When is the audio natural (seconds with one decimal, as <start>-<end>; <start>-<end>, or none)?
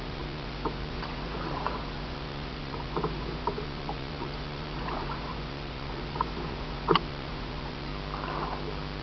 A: 7.9-9.0